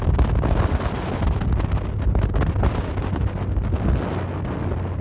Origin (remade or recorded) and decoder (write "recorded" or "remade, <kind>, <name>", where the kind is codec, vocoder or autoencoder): recorded